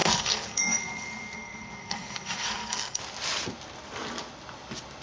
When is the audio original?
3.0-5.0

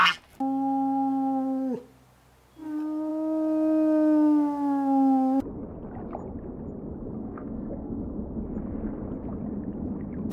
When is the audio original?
0.0-7.2; 8.0-10.3

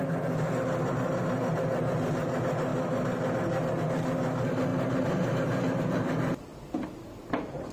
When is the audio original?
0.0-7.7

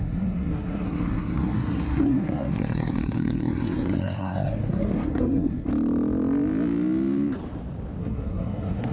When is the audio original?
5.7-8.0

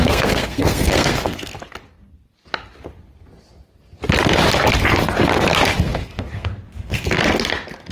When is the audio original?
1.5-5.8; 7.2-7.9